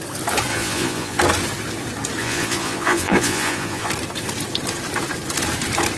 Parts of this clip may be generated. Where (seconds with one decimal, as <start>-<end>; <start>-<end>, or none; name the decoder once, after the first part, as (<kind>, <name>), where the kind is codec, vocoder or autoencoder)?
0.5-1.2 (vocoder, Vocos); 2.2-3.9